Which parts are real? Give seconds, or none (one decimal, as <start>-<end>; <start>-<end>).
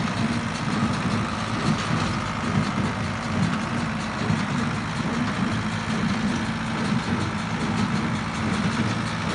0.0-9.3